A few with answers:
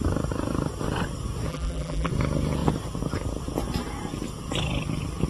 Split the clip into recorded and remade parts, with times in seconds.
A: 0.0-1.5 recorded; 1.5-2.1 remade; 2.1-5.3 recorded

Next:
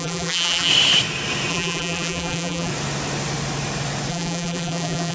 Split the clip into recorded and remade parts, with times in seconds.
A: 0.0-0.7 remade; 0.7-1.5 recorded; 1.5-2.7 remade; 2.7-4.1 recorded; 4.1-5.1 remade

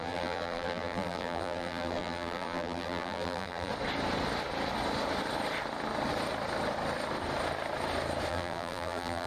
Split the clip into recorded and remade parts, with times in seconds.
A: 0.0-3.7 remade; 3.7-8.3 recorded; 8.3-9.3 remade

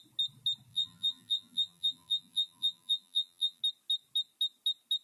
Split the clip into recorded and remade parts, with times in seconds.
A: 0.0-0.7 recorded; 0.7-3.6 remade; 3.6-5.0 recorded

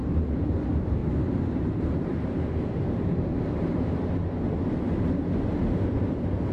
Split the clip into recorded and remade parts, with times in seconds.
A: 0.0-0.6 remade; 0.6-1.0 recorded; 1.0-1.7 remade; 1.7-2.1 recorded; 2.1-4.1 remade; 4.1-6.5 recorded

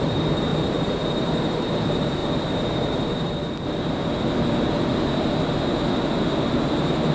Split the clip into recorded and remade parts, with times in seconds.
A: 0.0-0.5 remade; 0.5-1.7 recorded; 1.7-2.2 remade; 2.2-6.5 recorded; 6.5-7.1 remade

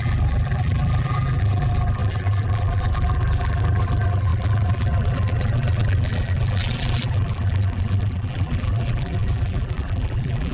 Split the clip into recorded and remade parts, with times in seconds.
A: 0.0-10.5 remade